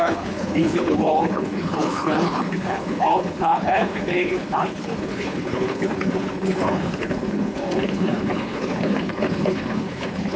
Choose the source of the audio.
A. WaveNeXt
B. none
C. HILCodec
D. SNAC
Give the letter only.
C